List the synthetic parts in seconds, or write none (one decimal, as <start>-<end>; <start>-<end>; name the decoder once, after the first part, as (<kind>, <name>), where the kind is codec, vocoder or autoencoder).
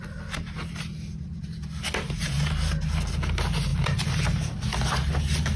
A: 0.0-2.4 (vocoder, BigVGAN v2); 3.7-4.6